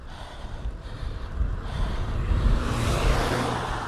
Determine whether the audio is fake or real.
fake